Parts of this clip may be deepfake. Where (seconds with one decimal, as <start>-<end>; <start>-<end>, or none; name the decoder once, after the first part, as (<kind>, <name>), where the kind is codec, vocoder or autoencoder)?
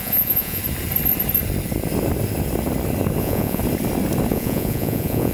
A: 0.0-0.6 (vocoder, Vocos); 3.2-3.6; 4.3-5.3